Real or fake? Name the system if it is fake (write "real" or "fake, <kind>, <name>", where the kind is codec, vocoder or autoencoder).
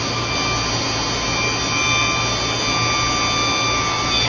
real